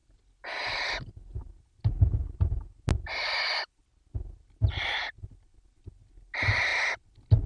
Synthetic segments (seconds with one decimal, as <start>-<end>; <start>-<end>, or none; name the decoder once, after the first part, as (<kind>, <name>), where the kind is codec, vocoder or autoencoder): 0.0-1.4 (vocoder, BigVGAN v2)